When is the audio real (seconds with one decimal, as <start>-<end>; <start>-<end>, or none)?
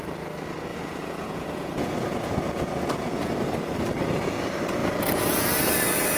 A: 0.0-0.7; 3.3-4.8; 5.7-6.2